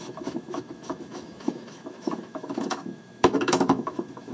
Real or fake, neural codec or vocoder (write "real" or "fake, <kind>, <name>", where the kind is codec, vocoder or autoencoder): fake, autoencoder, DAC-VAE